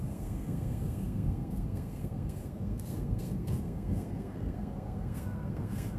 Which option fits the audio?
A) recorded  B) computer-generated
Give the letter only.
B